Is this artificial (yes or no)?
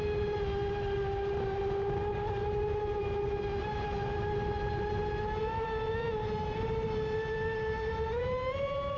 no